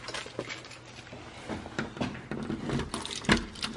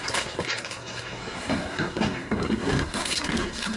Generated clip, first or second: second